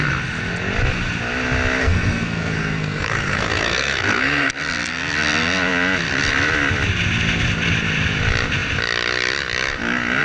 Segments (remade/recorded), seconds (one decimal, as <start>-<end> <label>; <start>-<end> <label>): 0.0-1.8 recorded; 1.8-4.5 remade; 4.5-10.2 recorded